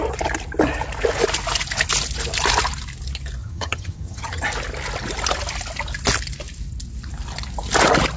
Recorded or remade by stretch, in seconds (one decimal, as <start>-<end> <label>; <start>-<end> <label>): 0.0-3.4 recorded; 3.4-4.4 remade; 4.4-8.2 recorded